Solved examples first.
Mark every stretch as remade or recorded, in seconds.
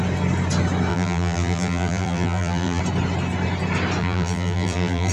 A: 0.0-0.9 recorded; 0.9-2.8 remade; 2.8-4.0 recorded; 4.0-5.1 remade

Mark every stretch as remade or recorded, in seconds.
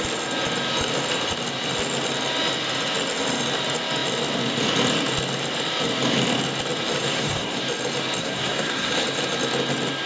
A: 0.0-7.0 recorded; 7.0-7.6 remade; 7.6-8.2 recorded; 8.2-8.9 remade; 8.9-10.1 recorded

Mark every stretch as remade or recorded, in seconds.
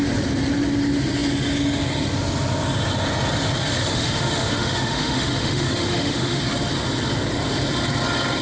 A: 0.0-3.9 recorded; 3.9-6.4 remade; 6.4-8.4 recorded